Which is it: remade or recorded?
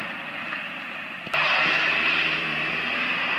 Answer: remade